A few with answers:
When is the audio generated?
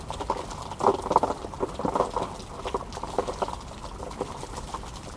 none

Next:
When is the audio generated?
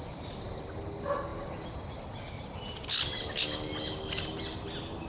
none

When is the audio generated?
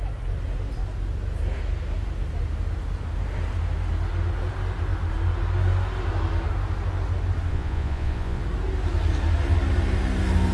7.5-8.4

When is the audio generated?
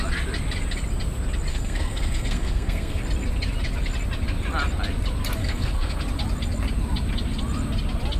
1.5-3.0; 5.4-6.0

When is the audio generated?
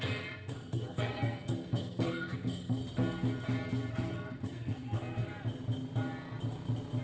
0.0-2.8; 3.9-5.3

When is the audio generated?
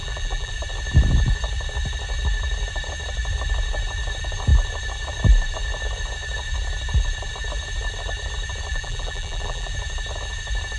0.0-0.5; 8.7-9.7